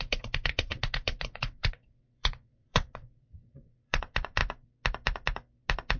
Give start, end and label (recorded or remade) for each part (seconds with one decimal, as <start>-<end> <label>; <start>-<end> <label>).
0.0-4.4 remade; 4.4-6.0 recorded